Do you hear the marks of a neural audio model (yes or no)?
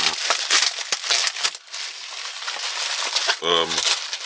no